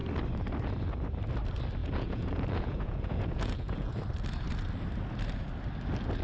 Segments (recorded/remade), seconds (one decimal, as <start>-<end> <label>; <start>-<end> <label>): 0.0-1.8 recorded; 1.8-4.0 remade; 4.0-6.2 recorded